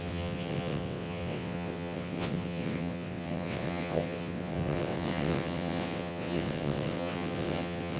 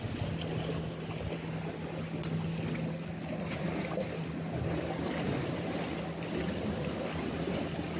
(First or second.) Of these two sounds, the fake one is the first